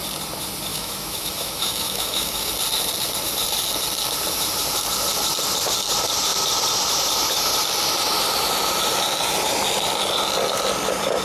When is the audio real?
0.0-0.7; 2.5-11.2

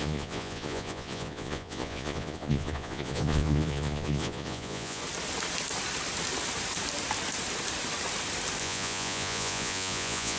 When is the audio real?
5.0-8.6

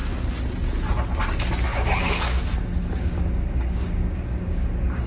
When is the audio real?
0.0-1.7